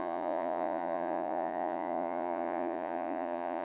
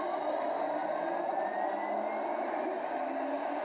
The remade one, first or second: first